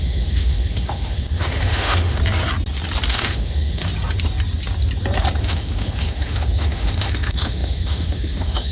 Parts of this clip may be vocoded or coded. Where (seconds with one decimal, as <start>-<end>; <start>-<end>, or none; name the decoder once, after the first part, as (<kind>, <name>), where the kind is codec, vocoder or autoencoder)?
0.0-2.2 (autoencoder, DAC-VAE); 3.1-3.9; 5.4-8.7